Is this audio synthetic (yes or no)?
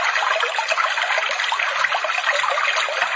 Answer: no